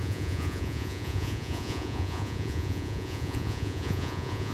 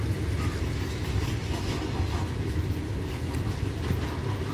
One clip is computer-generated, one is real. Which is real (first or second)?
second